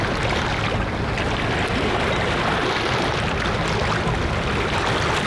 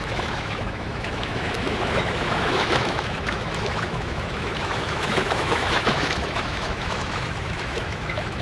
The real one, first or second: first